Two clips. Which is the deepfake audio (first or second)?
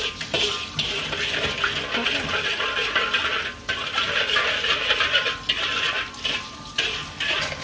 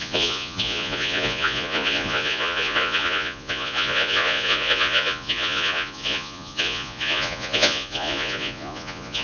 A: second